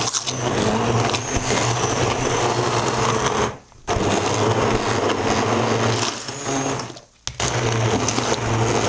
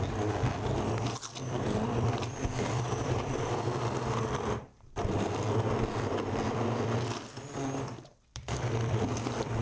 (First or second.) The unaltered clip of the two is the first